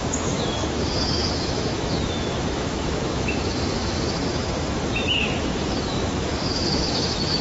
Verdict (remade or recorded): remade